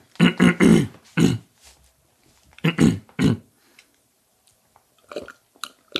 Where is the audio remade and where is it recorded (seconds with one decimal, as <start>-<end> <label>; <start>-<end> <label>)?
0.0-0.7 recorded; 0.7-4.3 remade; 4.3-6.0 recorded